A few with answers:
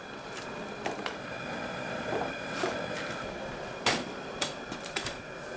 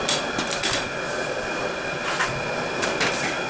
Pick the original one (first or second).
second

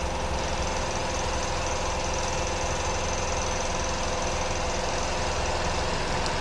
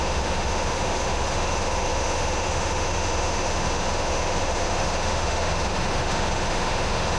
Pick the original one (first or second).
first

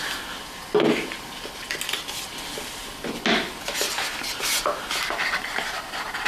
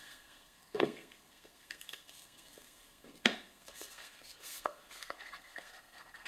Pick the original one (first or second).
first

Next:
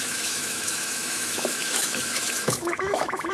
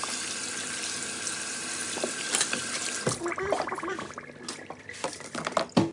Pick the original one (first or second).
second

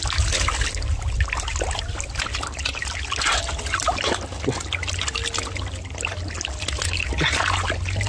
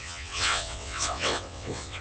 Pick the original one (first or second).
first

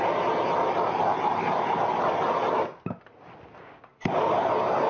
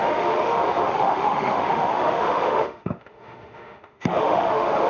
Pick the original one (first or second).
first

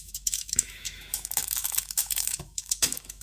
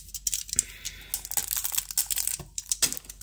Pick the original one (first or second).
second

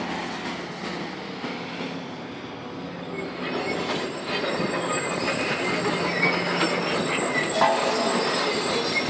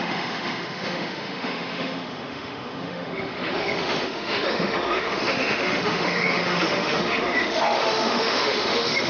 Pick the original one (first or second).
first